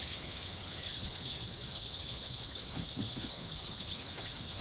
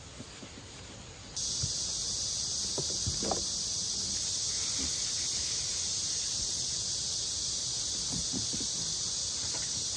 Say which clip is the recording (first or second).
second